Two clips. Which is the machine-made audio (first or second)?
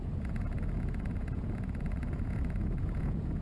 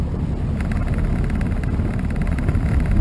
first